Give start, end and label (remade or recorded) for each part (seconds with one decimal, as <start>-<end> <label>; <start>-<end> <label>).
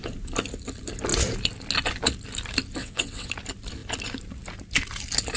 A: 0.0-2.8 recorded; 2.8-3.3 remade; 3.3-5.4 recorded